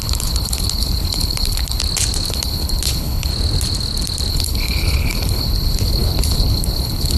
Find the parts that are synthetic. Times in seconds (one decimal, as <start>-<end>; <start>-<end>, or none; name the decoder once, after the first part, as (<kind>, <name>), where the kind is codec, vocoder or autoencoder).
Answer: 0.0-1.8 (codec, HILCodec); 2.3-3.3; 4.3-7.2